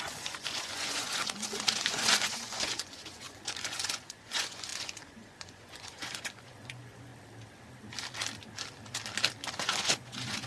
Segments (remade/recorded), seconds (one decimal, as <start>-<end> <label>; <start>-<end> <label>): 0.0-7.1 remade; 7.1-9.5 recorded; 9.5-10.5 remade